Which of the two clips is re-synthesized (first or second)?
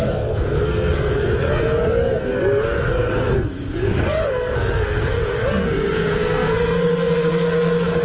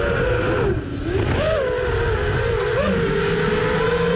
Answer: first